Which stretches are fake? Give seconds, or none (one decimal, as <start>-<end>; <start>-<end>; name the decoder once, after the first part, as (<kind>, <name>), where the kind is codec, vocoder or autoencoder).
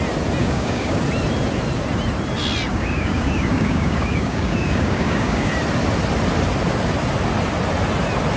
0.4-1.0 (codec, DAC); 2.7-5.5